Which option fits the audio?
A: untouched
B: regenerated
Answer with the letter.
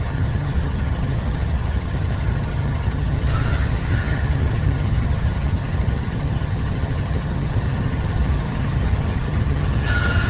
B